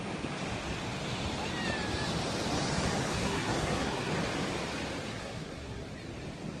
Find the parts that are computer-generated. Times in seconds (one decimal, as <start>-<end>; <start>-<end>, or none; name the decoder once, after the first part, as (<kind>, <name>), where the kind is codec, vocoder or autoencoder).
3.1-4.1 (codec, SNAC); 5.1-5.8